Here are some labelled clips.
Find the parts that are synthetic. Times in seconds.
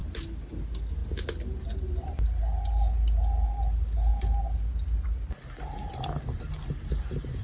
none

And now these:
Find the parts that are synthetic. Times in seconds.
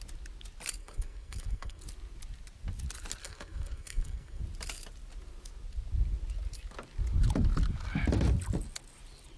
0.8-1.8 (codec, SNAC); 3.2-4.4